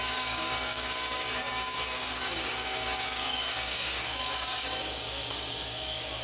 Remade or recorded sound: remade